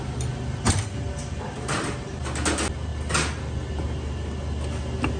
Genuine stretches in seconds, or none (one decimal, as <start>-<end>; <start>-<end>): 0.0-5.2